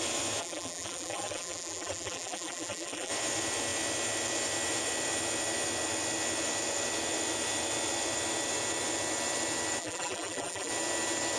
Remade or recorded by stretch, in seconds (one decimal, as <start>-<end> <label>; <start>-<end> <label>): 0.0-0.4 recorded; 0.4-3.1 remade; 3.1-9.8 recorded; 9.8-10.7 remade; 10.7-11.4 recorded

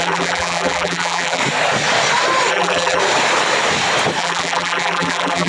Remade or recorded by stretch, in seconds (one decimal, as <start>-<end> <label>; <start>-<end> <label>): 0.0-1.4 remade; 1.4-2.5 recorded; 2.5-3.0 remade; 3.0-4.2 recorded; 4.2-5.5 remade

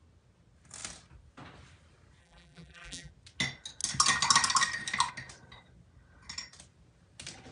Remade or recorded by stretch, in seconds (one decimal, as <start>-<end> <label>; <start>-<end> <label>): 0.0-2.2 recorded; 2.2-3.1 remade; 3.1-7.5 recorded

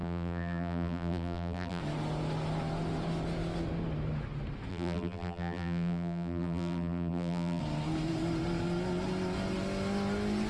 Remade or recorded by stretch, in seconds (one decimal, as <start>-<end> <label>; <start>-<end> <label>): 0.0-1.8 remade; 1.8-4.7 recorded; 4.7-7.6 remade; 7.6-10.5 recorded

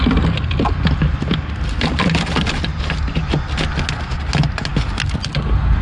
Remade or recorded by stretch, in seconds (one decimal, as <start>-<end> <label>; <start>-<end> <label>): 0.0-5.8 recorded

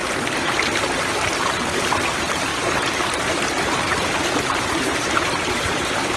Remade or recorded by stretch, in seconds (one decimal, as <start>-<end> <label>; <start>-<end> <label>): 0.0-1.1 recorded; 1.1-6.2 remade

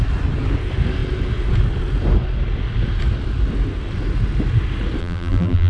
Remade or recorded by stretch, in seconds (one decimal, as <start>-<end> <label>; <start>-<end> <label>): 0.0-5.0 recorded; 5.0-5.7 remade